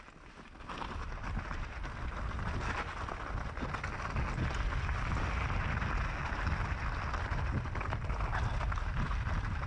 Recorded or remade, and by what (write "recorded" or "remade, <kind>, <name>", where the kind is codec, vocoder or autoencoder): recorded